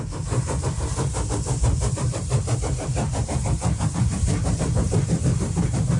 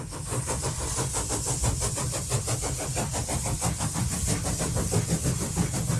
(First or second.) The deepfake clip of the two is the first